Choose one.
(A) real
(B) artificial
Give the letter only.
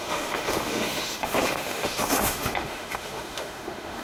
B